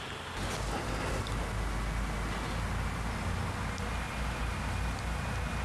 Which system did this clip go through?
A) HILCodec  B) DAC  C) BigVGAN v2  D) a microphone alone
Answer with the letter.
D